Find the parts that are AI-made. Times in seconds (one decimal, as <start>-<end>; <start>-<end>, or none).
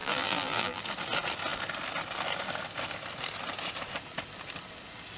0.0-0.8